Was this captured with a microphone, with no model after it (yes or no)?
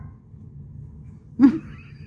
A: yes